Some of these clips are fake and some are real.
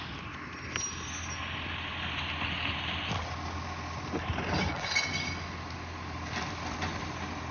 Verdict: real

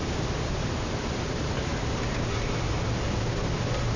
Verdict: real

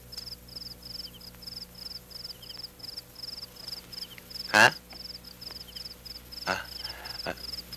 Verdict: real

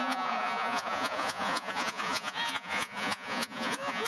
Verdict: fake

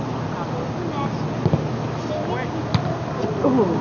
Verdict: real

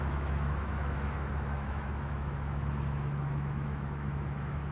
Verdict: fake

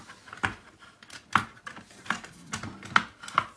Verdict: real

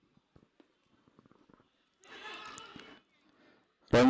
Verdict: real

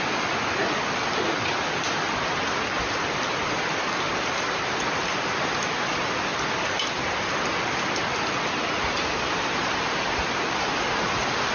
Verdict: real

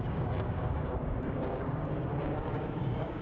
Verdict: fake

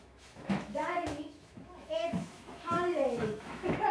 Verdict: fake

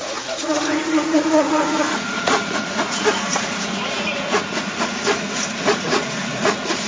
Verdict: fake